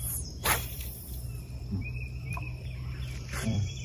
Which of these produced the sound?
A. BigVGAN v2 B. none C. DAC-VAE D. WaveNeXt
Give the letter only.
A